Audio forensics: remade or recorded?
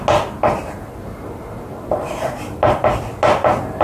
recorded